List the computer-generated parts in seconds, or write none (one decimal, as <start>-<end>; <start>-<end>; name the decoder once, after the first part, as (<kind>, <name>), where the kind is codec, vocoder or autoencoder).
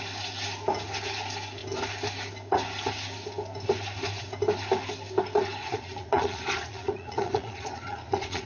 5.6-8.5 (vocoder, Vocos)